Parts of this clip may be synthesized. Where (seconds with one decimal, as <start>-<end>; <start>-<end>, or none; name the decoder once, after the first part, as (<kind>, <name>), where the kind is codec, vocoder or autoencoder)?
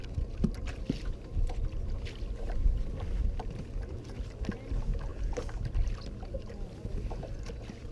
none